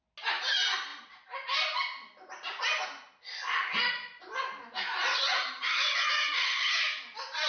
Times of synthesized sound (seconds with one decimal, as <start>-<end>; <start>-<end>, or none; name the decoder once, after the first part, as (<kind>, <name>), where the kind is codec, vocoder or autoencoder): 5.1-6.8 (vocoder, HiFi-GAN)